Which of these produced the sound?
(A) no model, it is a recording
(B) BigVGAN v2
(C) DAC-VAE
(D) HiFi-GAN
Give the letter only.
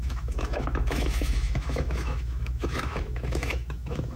C